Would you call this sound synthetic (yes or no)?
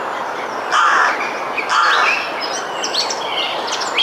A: no